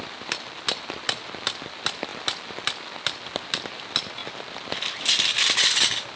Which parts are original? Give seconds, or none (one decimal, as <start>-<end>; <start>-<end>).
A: none